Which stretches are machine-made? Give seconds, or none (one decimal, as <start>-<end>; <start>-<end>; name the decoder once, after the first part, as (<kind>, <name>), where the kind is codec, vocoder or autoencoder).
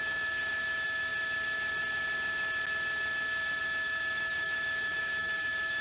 0.0-1.1 (autoencoder, DAC-VAE); 3.6-5.8